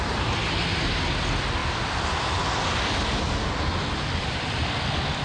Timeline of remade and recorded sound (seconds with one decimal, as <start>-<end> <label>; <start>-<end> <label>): 0.0-5.2 recorded